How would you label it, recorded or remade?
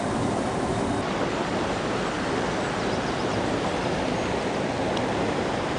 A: recorded